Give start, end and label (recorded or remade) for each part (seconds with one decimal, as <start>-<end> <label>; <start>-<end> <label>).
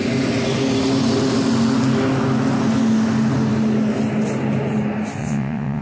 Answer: 0.0-5.2 recorded; 5.2-5.8 remade